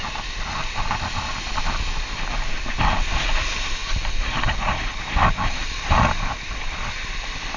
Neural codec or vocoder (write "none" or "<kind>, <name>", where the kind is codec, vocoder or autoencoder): none